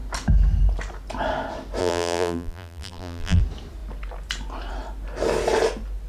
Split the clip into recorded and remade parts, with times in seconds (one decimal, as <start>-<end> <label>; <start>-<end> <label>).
0.0-1.8 recorded; 1.8-3.4 remade; 3.4-6.1 recorded